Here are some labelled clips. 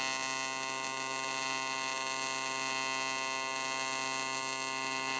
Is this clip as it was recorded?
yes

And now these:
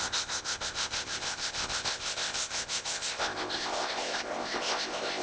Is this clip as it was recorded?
no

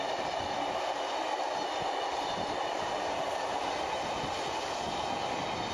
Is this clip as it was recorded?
yes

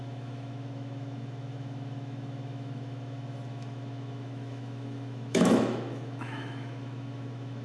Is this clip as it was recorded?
no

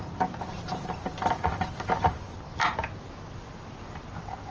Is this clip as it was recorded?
yes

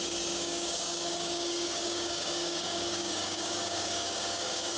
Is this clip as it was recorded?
no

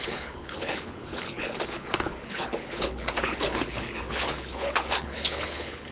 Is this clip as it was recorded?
no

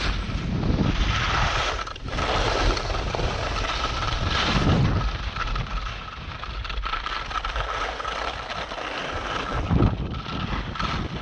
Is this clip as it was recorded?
yes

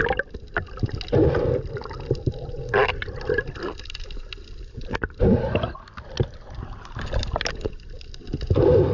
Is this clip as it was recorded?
yes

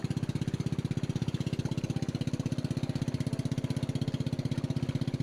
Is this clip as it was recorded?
yes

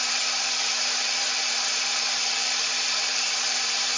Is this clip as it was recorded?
no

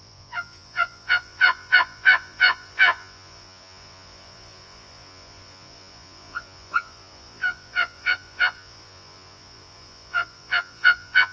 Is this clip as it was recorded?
no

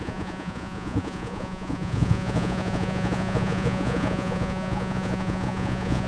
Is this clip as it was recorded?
no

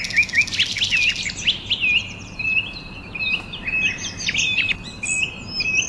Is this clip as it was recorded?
yes